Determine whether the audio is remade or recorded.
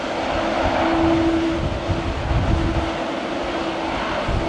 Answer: recorded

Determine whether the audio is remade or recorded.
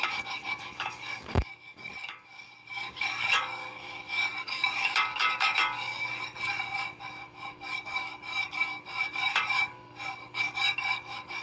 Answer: remade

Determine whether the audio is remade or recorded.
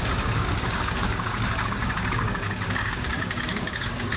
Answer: remade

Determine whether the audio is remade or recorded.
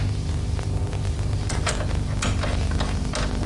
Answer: recorded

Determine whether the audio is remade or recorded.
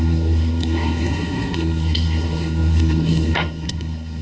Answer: remade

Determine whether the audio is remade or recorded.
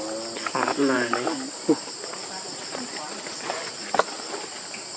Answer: recorded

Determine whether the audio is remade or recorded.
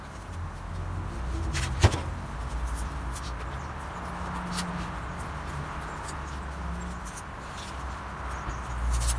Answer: recorded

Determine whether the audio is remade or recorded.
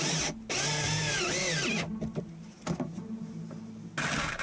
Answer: recorded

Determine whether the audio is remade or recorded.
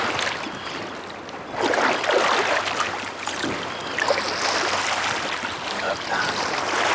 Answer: recorded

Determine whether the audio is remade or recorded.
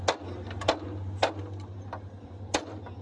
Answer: recorded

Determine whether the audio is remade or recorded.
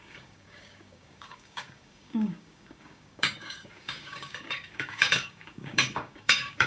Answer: remade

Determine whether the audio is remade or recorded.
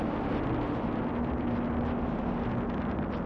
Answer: recorded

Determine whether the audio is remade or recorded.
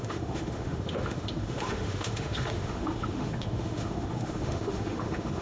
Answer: remade